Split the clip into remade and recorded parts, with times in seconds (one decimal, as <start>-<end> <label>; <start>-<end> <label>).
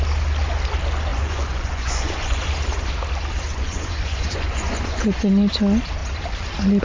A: 0.0-1.1 recorded; 1.1-2.5 remade; 2.5-3.5 recorded; 3.5-5.5 remade; 5.5-6.8 recorded